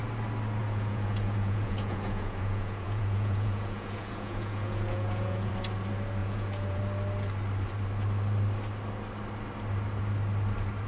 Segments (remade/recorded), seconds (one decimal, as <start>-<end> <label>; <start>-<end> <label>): 0.0-0.6 recorded; 0.6-5.5 remade; 5.5-6.2 recorded; 6.2-6.8 remade; 6.8-10.9 recorded